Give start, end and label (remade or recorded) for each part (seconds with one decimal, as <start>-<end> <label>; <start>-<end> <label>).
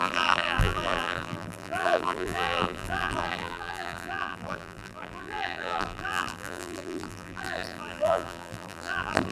0.0-9.3 remade